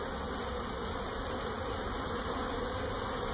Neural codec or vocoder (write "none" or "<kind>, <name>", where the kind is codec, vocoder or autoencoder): none